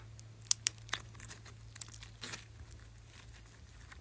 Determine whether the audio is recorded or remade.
recorded